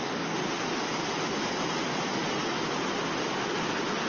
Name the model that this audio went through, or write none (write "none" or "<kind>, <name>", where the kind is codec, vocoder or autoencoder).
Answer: none